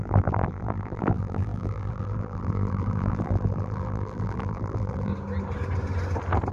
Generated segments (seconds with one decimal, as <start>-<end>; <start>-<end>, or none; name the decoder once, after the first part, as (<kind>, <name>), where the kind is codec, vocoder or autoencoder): 0.0-5.1 (vocoder, BigVGAN v2)